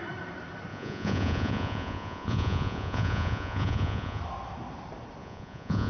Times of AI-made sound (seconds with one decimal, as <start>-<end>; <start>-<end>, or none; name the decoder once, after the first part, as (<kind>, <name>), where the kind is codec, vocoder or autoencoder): 0.7-4.2 (vocoder, Vocos); 5.2-5.9